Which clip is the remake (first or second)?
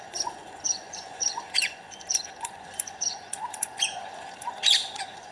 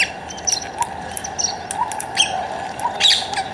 first